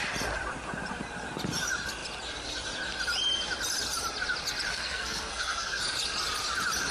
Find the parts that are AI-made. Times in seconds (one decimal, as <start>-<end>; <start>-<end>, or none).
4.7-5.8